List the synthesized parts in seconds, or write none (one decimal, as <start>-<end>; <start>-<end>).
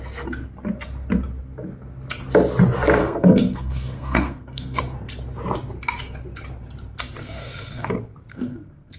3.0-4.8; 7.2-7.9; 8.3-9.0